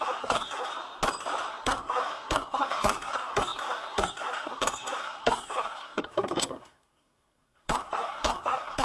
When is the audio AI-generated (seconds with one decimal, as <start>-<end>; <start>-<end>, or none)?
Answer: 0.0-0.7; 1.5-8.8